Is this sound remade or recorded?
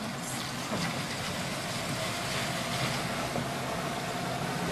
recorded